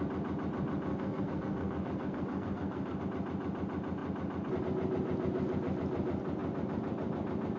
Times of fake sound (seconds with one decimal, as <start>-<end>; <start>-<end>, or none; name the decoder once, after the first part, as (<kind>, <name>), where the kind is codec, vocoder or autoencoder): 0.9-3.0 (codec, SNAC)